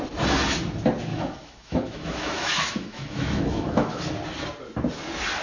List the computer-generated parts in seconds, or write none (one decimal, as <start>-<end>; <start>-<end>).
1.1-4.0